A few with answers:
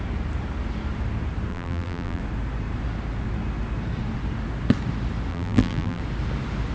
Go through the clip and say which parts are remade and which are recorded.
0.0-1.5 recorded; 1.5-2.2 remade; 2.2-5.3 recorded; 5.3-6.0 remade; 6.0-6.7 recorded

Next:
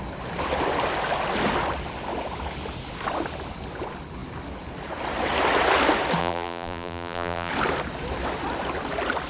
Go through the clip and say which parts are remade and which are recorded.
0.0-6.2 recorded; 6.2-7.5 remade; 7.5-9.3 recorded

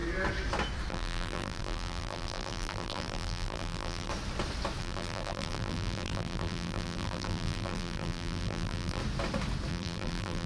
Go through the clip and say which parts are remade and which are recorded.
0.0-0.9 recorded; 0.9-4.1 remade; 4.1-4.8 recorded; 4.8-9.0 remade; 9.0-9.7 recorded; 9.7-10.5 remade

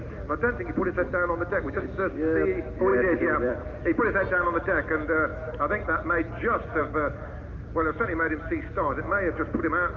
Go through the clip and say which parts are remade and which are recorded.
0.0-2.9 recorded; 2.9-4.0 remade; 4.0-10.0 recorded

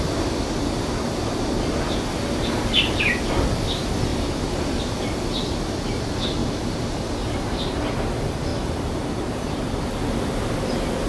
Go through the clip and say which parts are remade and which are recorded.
0.0-4.1 recorded; 4.1-4.8 remade; 4.8-6.4 recorded; 6.4-7.9 remade; 7.9-8.5 recorded; 8.5-9.6 remade; 9.6-11.1 recorded

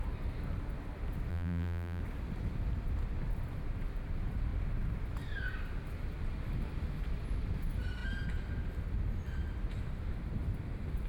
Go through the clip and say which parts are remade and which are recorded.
0.0-1.3 recorded; 1.3-2.0 remade; 2.0-11.1 recorded

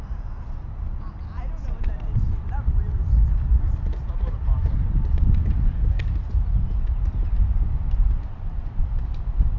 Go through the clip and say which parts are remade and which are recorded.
0.0-8.2 recorded; 8.2-8.8 remade; 8.8-9.6 recorded

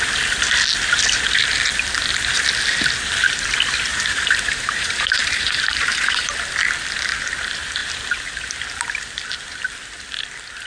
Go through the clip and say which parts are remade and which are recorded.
0.0-3.9 recorded; 3.9-6.5 remade; 6.5-10.7 recorded